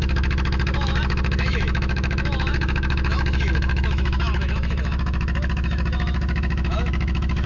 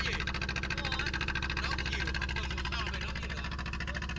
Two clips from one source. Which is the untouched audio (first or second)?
second